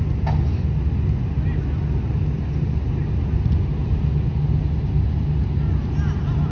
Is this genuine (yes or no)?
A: yes